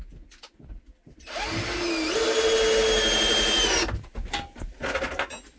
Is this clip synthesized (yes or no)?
no